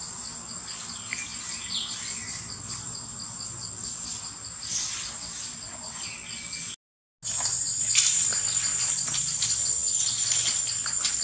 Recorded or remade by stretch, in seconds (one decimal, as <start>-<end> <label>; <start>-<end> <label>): 0.0-11.2 recorded